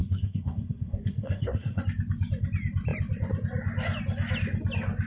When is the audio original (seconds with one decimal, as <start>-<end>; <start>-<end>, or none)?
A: 1.8-5.1